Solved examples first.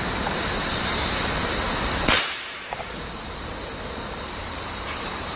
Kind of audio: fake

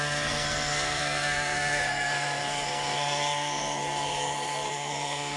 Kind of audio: fake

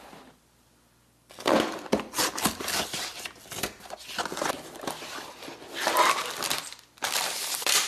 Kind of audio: real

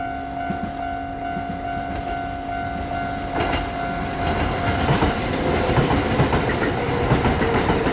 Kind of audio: real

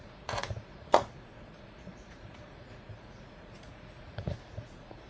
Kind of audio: fake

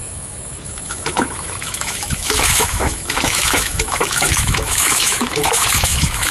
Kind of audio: fake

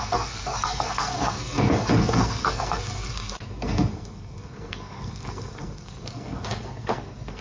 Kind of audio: fake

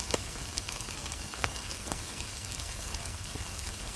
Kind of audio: fake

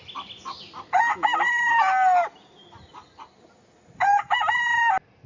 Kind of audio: real